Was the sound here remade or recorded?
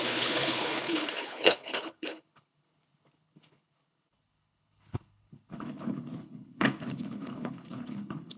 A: remade